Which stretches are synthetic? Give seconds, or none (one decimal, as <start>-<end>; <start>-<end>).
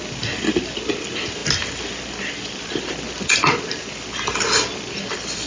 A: none